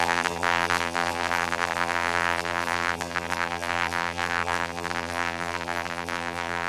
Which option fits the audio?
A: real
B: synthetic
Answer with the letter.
B